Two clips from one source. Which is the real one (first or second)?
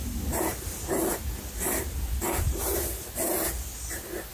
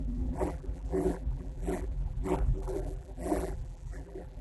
first